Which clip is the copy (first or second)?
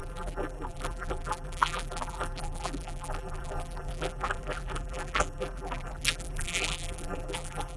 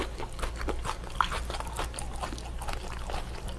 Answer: first